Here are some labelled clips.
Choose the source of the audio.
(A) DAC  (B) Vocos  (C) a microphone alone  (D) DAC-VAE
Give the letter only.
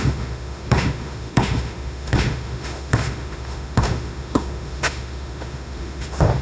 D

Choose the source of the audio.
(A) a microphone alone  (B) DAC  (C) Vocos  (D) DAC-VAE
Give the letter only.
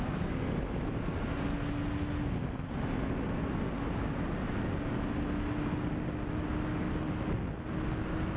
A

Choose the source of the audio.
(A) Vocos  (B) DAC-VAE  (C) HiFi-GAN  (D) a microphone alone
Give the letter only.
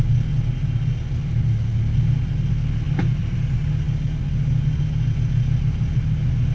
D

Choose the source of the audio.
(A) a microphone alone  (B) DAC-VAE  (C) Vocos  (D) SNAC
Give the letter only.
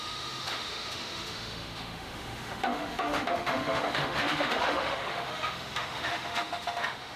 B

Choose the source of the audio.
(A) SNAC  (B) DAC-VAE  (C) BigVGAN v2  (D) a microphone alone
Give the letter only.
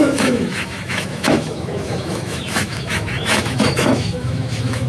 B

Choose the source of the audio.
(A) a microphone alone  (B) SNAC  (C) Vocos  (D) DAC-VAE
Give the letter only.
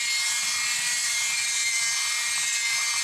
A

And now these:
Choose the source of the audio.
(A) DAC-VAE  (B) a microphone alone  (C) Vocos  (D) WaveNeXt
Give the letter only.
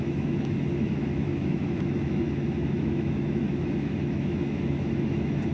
A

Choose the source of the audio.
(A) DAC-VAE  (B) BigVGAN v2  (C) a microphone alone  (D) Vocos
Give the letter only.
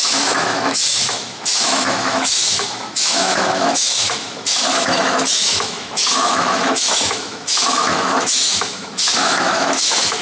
A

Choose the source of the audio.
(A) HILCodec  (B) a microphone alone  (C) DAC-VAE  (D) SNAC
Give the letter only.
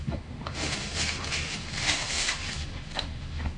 C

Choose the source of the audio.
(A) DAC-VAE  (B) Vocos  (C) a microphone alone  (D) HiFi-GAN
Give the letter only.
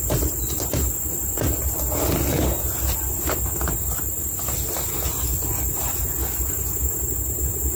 C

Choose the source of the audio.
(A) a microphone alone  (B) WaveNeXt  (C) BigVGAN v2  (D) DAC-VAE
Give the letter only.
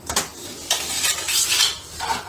A